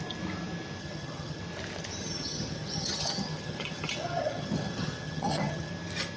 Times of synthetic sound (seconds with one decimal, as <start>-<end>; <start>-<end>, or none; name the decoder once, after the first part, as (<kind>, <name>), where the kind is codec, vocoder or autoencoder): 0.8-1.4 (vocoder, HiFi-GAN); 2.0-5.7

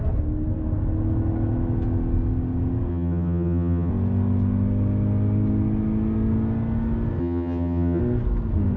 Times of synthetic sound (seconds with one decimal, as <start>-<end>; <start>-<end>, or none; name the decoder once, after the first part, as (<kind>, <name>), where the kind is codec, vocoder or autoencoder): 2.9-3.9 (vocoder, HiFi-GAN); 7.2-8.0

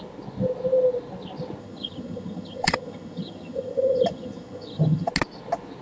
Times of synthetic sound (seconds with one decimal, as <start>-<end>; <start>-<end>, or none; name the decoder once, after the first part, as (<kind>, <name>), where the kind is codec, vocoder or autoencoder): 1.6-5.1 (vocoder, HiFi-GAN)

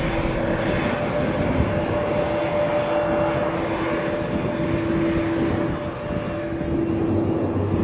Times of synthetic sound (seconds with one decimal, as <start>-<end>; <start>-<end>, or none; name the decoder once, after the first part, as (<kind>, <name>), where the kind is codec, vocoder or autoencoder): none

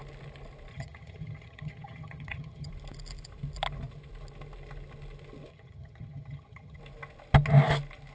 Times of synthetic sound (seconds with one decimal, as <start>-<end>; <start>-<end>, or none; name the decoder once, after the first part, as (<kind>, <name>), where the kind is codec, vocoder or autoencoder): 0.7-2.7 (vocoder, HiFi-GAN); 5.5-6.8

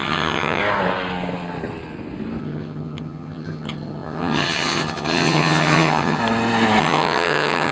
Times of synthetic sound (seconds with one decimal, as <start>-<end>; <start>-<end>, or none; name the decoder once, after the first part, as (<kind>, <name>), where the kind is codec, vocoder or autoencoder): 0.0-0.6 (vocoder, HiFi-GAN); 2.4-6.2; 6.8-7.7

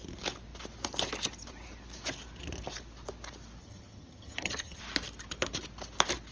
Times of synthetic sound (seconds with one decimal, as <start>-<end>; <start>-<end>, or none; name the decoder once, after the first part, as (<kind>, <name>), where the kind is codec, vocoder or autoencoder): 3.6-4.8 (vocoder, HiFi-GAN)